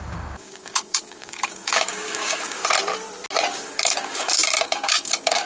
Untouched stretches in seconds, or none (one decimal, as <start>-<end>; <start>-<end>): 2.6-3.5